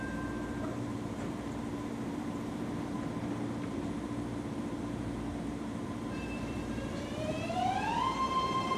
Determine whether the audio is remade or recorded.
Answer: remade